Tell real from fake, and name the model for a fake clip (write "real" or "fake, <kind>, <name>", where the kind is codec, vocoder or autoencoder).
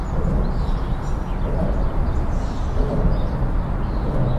real